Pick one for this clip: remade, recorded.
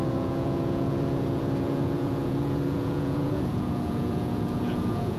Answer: remade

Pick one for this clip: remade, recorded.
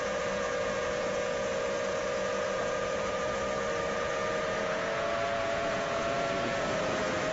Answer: remade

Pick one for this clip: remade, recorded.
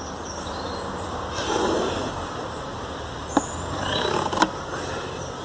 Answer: recorded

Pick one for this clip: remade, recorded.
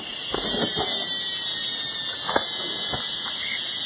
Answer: recorded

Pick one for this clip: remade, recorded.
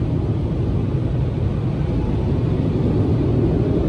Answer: recorded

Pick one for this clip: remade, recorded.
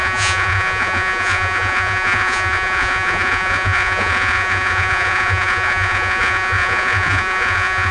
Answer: remade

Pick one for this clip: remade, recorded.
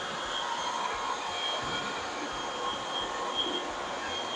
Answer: recorded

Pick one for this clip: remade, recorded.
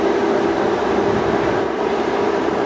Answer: recorded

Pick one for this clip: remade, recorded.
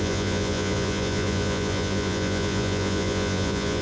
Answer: remade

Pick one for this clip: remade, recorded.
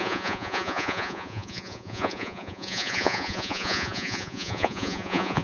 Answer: remade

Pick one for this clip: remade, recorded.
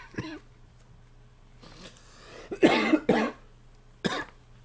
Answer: recorded